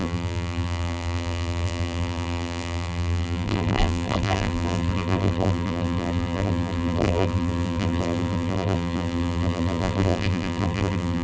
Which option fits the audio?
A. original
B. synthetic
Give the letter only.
B